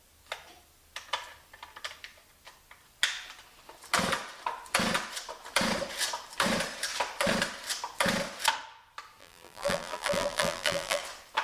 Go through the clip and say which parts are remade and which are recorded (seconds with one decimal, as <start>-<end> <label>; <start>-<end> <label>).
0.0-9.2 recorded; 9.2-11.0 remade; 11.0-11.4 recorded